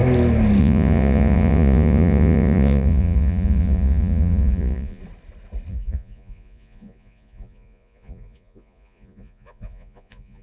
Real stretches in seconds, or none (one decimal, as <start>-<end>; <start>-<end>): 0.0-0.6; 5.0-5.7